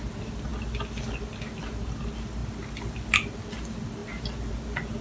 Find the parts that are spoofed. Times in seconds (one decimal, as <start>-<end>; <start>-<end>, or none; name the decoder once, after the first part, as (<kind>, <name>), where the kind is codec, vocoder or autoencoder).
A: none